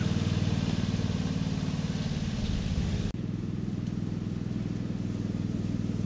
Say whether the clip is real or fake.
real